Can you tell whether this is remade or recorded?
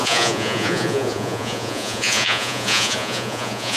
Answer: remade